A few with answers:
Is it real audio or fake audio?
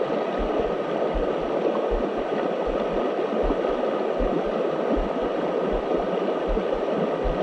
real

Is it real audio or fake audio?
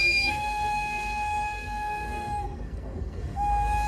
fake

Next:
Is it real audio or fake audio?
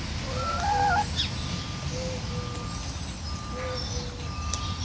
real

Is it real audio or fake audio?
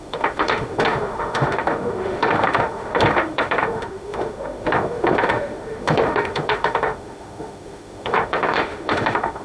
fake